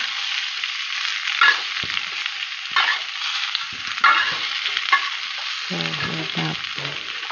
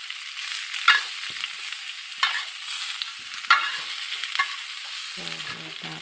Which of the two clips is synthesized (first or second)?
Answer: first